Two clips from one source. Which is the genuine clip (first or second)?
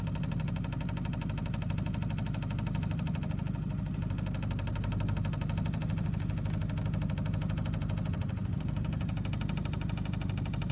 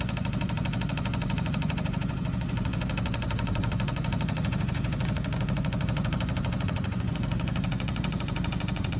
first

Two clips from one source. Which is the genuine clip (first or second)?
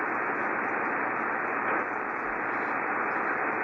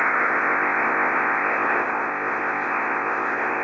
first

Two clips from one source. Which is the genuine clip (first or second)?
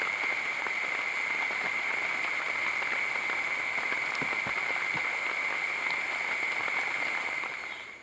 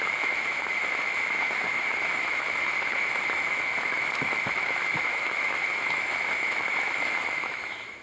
first